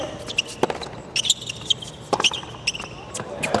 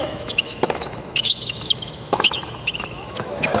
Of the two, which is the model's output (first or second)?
second